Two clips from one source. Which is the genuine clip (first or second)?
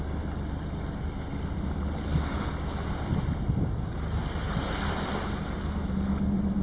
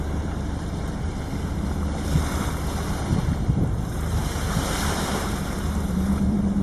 first